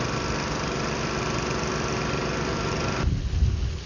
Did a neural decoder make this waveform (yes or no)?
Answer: no